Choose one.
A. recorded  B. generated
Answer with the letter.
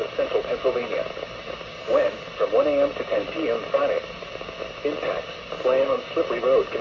A